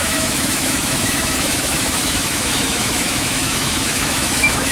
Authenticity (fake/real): fake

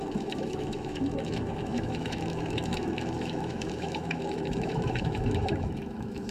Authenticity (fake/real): fake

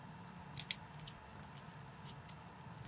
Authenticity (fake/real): real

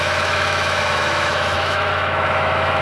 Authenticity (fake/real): fake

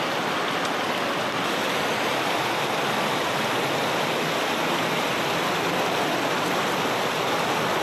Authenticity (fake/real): real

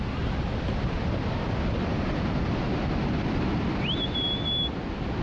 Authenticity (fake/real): real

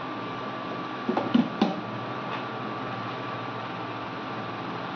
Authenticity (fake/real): real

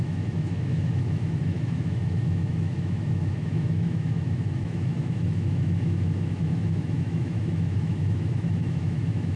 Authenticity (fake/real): fake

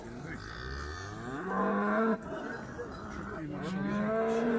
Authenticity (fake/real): real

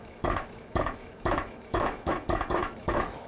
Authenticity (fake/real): fake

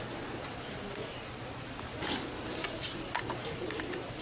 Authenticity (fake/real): real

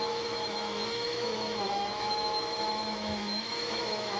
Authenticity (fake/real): fake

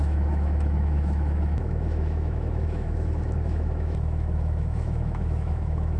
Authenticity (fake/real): fake